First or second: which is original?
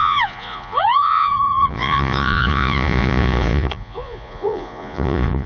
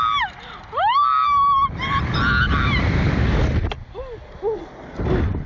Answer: second